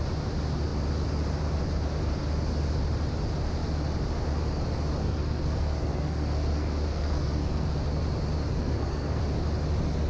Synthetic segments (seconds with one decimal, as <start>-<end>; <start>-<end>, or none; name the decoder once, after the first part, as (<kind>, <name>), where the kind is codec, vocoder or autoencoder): 5.0-7.7 (codec, SNAC); 8.5-9.2